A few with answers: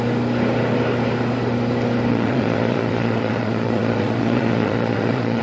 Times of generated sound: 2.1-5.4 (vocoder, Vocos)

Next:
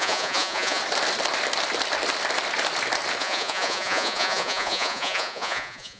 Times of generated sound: 0.0-0.8 (vocoder, Vocos); 3.2-6.0

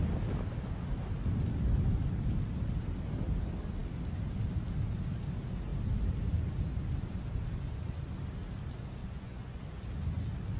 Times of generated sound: 9.0-9.6 (vocoder, Vocos)

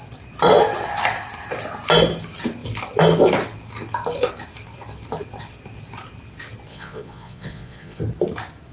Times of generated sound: 6.7-8.0 (vocoder, Vocos)

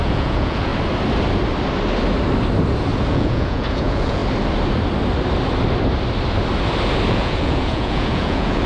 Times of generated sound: 0.0-0.7 (vocoder, Vocos); 3.1-4.2; 7.1-8.7

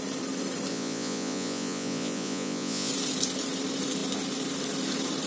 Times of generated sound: 0.7-2.9 (vocoder, Vocos)